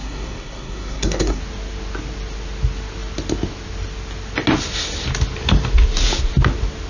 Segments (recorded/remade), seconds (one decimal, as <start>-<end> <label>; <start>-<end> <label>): 0.0-1.4 remade; 1.4-6.9 recorded